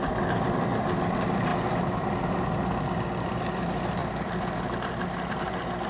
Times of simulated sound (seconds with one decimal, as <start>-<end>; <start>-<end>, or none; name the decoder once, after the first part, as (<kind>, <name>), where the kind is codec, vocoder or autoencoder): 1.5-2.4 (vocoder, BigVGAN v2); 4.0-4.6